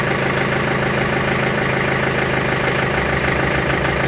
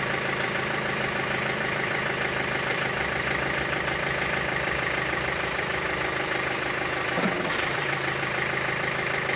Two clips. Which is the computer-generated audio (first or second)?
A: second